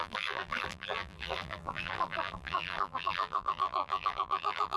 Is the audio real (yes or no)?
no